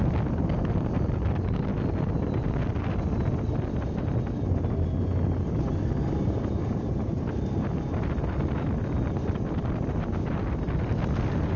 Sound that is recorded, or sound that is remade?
recorded